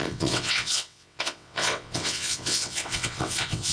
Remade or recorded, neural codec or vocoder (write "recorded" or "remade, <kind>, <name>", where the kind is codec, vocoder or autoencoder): remade, vocoder, WaveNeXt